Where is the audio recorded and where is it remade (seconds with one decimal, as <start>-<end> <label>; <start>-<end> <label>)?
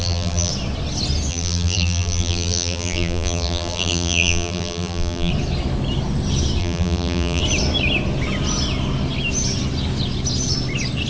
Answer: 0.0-0.5 remade; 0.5-1.3 recorded; 1.3-5.3 remade; 5.3-6.6 recorded; 6.6-7.4 remade; 7.4-11.1 recorded